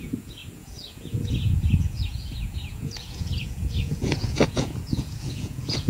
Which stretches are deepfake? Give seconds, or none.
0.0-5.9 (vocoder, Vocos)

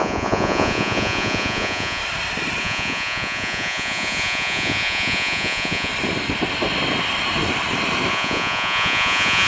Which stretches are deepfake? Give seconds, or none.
0.0-2.0 (vocoder, Vocos); 2.6-5.9; 8.1-9.5

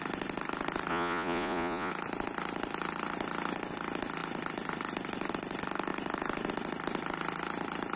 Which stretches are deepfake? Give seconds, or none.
0.9-1.9 (vocoder, Vocos)

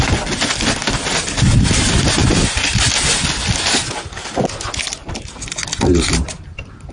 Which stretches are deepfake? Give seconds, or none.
none

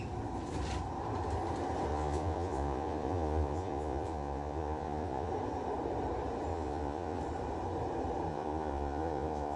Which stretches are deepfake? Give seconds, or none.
1.9-5.3 (vocoder, Vocos); 6.5-7.2; 8.3-9.6

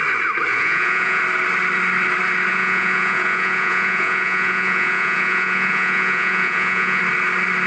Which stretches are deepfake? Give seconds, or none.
0.5-1.2 (vocoder, Vocos); 2.5-7.0

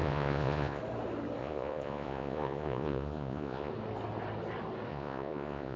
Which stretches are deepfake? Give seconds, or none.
0.0-0.8 (vocoder, Vocos); 1.4-3.7; 4.9-5.8